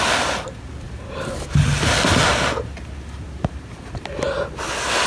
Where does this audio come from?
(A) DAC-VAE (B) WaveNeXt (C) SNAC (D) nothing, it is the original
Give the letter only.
D